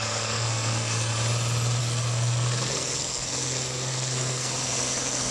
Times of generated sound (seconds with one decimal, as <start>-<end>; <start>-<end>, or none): 0.0-1.1; 1.8-5.3